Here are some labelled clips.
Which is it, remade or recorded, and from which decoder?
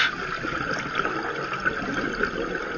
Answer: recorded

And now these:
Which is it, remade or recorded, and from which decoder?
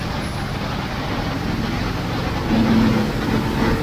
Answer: recorded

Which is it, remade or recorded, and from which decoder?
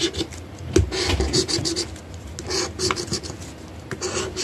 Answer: recorded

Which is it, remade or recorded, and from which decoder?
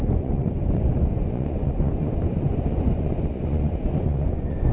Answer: remade, vocoder, Vocos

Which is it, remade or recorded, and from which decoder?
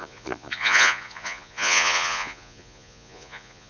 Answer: remade, vocoder, Vocos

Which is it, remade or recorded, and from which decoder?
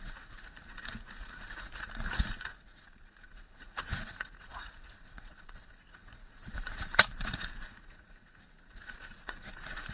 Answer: remade, vocoder, Vocos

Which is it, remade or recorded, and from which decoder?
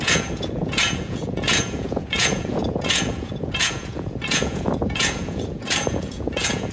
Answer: remade, vocoder, Vocos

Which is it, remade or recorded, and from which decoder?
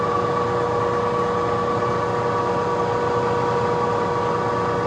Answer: recorded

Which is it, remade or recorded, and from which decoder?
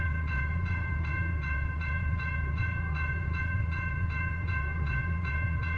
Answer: remade, vocoder, Vocos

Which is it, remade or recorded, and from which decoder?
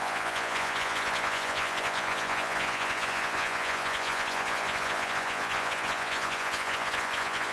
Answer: remade, vocoder, Vocos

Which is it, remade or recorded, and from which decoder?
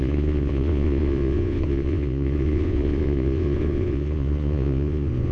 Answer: remade, vocoder, Vocos